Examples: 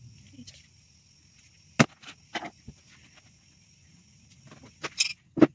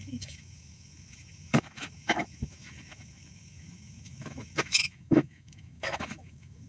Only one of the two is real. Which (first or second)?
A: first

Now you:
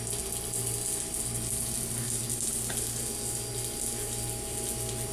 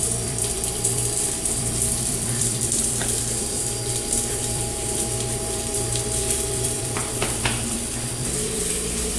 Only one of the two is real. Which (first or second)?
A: first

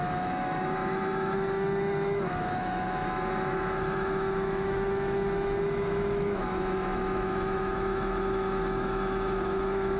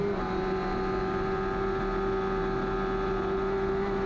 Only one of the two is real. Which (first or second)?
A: second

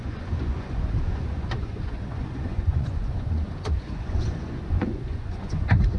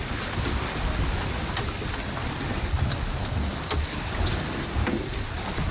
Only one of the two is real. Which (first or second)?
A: second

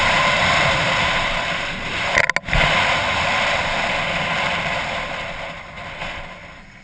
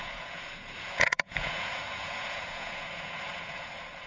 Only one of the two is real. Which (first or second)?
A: first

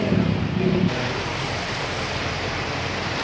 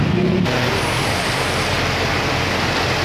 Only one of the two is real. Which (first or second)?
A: second